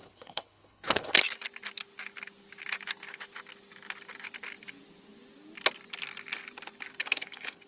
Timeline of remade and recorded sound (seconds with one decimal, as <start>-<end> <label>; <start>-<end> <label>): 0.0-1.2 remade; 1.2-7.0 recorded; 7.0-7.7 remade